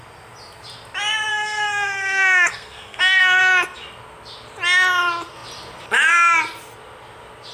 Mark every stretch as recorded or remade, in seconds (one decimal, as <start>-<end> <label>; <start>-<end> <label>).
0.0-1.3 recorded; 1.3-3.4 remade; 3.4-7.5 recorded